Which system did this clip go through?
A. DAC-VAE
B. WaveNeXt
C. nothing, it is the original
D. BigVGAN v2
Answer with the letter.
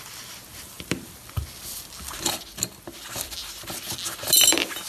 C